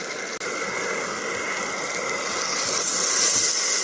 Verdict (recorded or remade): recorded